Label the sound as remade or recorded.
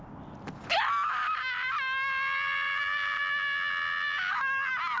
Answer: recorded